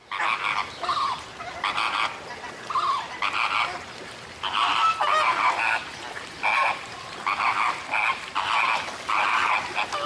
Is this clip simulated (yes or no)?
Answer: no